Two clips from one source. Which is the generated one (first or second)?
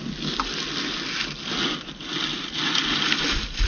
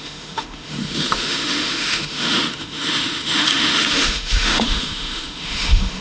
second